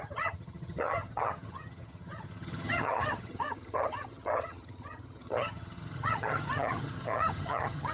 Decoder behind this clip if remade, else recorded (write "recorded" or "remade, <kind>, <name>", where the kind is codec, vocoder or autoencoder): remade, vocoder, HiFi-GAN